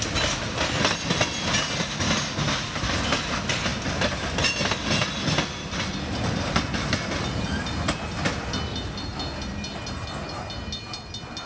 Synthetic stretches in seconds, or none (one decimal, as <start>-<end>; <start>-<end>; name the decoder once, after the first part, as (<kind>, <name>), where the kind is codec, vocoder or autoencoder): none